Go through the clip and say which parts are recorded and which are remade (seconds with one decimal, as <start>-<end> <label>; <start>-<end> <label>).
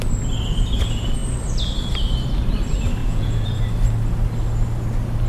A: 0.0-3.0 recorded; 3.0-3.6 remade; 3.6-5.3 recorded